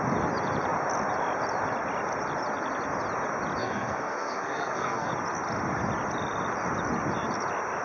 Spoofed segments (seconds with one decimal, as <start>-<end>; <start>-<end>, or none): 3.6-5.1